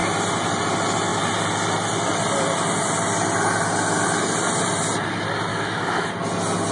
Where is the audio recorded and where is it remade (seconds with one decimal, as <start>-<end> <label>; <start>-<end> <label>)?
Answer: 0.0-5.5 recorded; 5.5-6.1 remade; 6.1-6.7 recorded